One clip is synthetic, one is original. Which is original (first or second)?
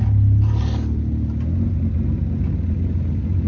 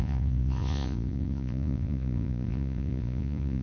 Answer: first